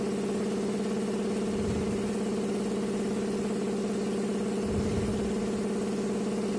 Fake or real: real